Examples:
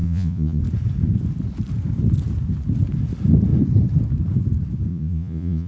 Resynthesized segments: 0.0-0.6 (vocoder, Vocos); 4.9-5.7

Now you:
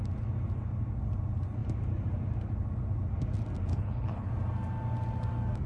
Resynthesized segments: 3.7-4.3 (codec, HILCodec)